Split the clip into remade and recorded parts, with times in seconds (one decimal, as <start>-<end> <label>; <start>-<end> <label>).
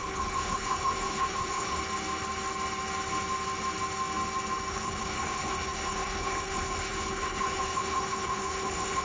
0.0-1.8 remade; 1.8-4.7 recorded; 4.7-9.0 remade